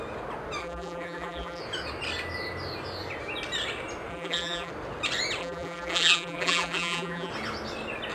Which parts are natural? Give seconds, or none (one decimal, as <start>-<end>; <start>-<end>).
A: 0.0-0.6; 1.6-4.1; 4.7-5.4; 7.3-8.1